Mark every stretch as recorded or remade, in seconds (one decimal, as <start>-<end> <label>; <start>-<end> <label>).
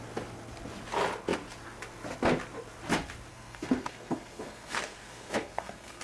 0.0-3.3 recorded; 3.3-6.0 remade